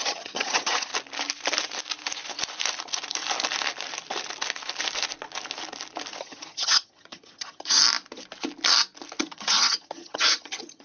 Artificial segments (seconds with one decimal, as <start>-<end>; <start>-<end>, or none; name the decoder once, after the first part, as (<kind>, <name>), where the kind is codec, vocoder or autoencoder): 0.0-0.9 (vocoder, HiFi-GAN); 6.2-7.8; 9.2-10.8